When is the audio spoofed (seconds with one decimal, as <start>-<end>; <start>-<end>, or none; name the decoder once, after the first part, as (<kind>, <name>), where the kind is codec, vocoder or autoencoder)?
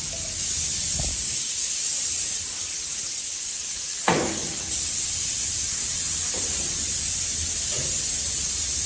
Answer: 1.1-1.7 (codec, DAC)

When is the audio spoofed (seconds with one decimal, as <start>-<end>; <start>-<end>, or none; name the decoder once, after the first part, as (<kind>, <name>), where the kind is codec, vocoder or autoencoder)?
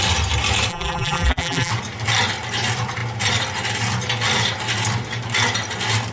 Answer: 0.7-1.7 (vocoder, BigVGAN v2)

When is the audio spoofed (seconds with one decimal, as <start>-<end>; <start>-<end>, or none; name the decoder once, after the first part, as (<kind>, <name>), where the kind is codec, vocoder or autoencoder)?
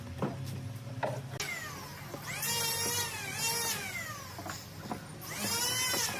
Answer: none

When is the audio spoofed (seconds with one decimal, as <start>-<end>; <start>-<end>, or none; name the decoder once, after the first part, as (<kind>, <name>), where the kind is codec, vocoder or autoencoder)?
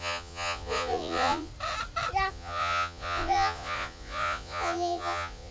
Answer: 0.0-1.5 (vocoder, Vocos); 2.3-5.5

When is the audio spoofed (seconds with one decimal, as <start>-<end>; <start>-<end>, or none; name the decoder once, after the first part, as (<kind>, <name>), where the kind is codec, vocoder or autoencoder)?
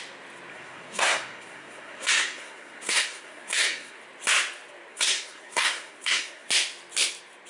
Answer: 0.5-4.0 (codec, SNAC); 4.9-6.5